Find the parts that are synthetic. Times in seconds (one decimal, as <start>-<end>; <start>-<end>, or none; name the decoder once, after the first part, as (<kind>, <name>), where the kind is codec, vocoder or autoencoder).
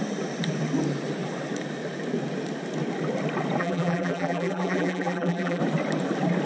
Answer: 3.6-5.6 (vocoder, BigVGAN v2)